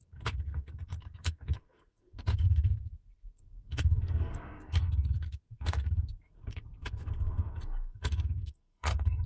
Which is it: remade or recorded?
remade